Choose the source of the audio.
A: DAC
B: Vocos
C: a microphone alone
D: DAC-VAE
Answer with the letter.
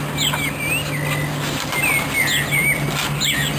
C